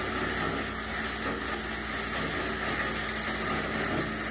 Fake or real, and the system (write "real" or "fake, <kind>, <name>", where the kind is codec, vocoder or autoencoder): real